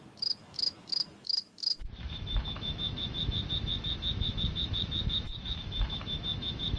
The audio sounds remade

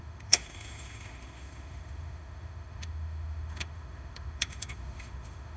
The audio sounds remade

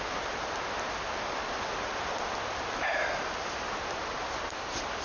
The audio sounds recorded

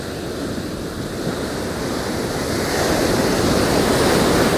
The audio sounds recorded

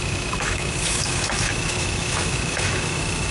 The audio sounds remade